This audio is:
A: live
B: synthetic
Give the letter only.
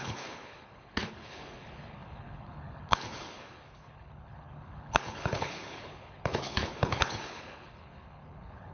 B